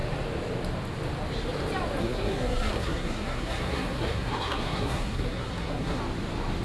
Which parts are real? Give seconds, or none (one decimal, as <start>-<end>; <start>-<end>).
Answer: 0.0-2.0; 6.0-6.6